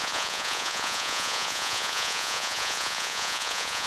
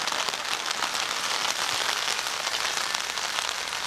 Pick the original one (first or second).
second